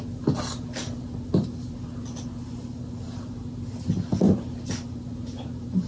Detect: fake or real real